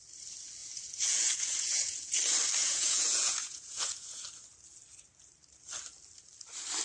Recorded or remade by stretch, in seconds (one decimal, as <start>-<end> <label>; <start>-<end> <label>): 0.0-0.6 recorded; 0.6-2.2 remade; 2.2-2.6 recorded; 2.6-4.2 remade; 4.2-6.8 recorded